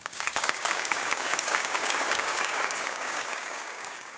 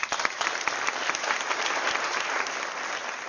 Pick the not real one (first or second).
first